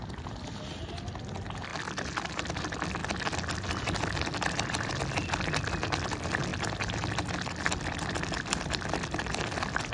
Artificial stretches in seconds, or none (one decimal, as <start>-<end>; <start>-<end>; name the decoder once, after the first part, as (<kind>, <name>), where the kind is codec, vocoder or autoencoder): 0.0-1.7 (vocoder, BigVGAN v2); 2.3-9.9